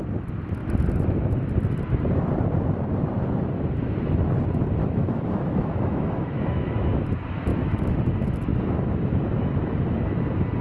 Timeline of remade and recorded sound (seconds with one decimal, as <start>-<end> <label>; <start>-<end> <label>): 0.0-4.8 recorded; 4.8-6.9 remade; 6.9-7.5 recorded; 7.5-8.0 remade; 8.0-10.6 recorded